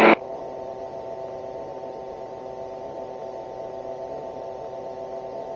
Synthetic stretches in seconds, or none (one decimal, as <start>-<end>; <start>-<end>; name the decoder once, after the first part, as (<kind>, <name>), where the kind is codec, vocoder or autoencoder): none